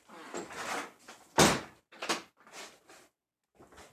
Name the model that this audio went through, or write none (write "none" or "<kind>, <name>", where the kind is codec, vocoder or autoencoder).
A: none